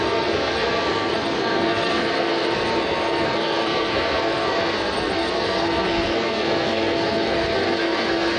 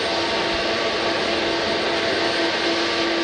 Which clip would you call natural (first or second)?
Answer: second